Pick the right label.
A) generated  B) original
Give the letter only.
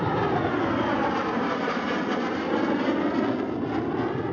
B